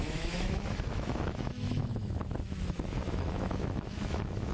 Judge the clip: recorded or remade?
remade